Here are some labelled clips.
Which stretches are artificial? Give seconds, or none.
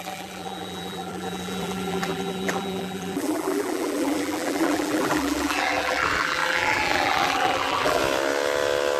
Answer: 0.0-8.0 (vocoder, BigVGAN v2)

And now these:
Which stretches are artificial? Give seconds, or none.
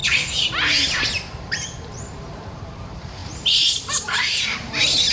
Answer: 1.0-5.1 (vocoder, BigVGAN v2)